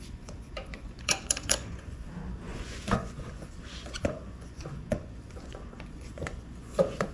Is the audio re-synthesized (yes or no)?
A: yes